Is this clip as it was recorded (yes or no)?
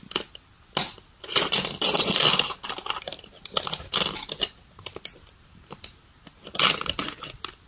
yes